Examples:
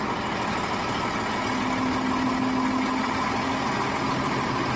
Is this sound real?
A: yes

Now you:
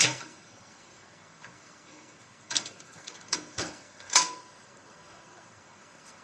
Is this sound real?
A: no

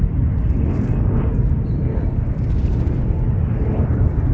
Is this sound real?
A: yes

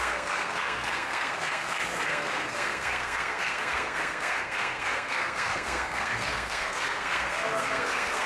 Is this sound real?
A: no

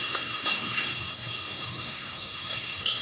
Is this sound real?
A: no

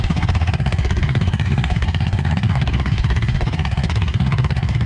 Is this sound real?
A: no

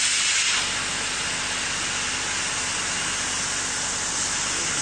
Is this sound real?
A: yes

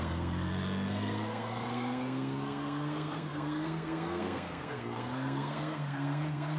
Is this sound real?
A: no